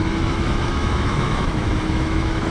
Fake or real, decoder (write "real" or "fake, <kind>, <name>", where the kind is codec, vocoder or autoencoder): fake, autoencoder, DAC-VAE